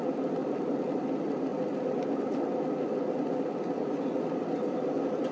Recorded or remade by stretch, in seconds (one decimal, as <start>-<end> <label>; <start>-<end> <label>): 0.0-0.4 recorded; 0.4-1.1 remade; 1.1-5.3 recorded

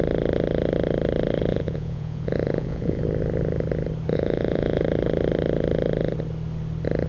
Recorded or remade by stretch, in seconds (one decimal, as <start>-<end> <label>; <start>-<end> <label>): 0.0-1.5 recorded; 1.5-3.0 remade; 3.0-4.1 recorded; 4.1-4.8 remade; 4.8-7.1 recorded

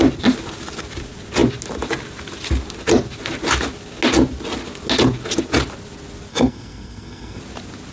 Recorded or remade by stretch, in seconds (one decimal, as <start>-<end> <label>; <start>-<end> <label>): 0.0-6.3 recorded; 6.3-7.4 remade; 7.4-7.9 recorded

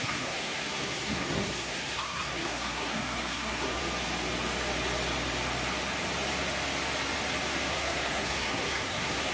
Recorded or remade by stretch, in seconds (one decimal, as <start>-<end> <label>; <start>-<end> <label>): 0.0-3.8 remade; 3.8-7.7 recorded; 7.7-9.3 remade

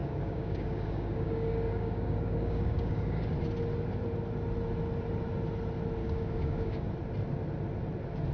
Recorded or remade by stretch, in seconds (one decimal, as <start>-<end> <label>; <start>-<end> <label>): 0.0-3.3 remade; 3.3-6.0 recorded; 6.0-6.9 remade; 6.9-8.3 recorded

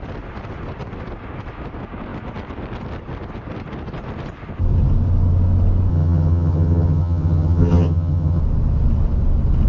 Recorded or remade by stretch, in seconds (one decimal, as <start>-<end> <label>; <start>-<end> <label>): 0.0-5.9 recorded; 5.9-8.4 remade; 8.4-9.7 recorded